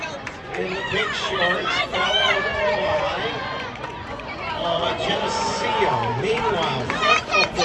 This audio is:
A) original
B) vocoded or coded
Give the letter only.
B